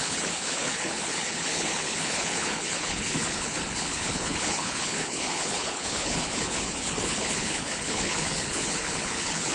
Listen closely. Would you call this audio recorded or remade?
remade